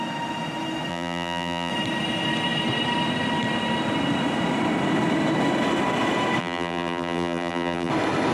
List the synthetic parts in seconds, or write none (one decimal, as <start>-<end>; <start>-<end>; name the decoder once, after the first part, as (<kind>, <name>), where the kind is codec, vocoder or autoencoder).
0.9-1.7 (vocoder, BigVGAN v2); 6.4-7.9